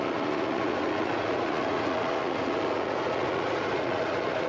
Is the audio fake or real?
fake